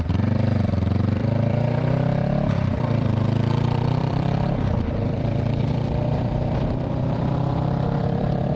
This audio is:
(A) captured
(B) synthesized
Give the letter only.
B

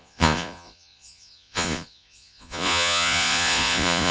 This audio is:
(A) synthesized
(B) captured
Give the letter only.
A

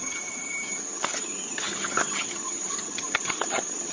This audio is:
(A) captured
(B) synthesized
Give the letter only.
B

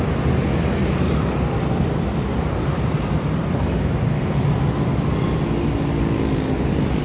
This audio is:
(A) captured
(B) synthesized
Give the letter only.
A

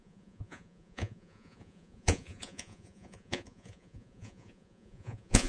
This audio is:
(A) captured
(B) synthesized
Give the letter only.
B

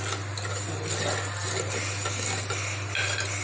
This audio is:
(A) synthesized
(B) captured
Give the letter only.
B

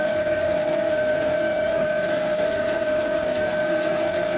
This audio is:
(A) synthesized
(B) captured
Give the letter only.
A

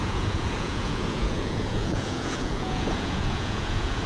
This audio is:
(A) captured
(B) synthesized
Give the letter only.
B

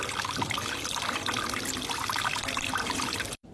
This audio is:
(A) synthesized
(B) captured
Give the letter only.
A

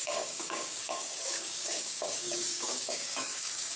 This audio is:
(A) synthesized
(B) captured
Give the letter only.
A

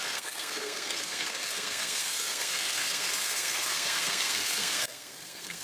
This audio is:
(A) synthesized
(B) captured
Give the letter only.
A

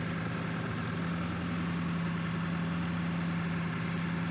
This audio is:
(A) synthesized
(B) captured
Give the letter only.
B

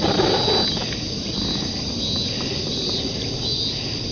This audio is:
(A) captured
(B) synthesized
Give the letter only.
A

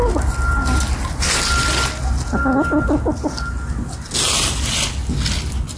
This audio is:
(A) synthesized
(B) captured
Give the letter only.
B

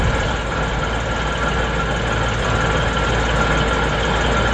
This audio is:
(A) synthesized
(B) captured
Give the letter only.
B